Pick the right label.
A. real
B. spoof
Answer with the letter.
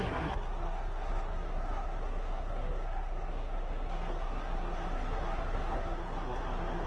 B